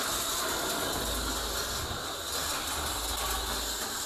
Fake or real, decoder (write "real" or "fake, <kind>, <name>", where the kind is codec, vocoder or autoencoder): real